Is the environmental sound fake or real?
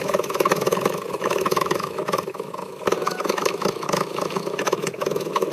fake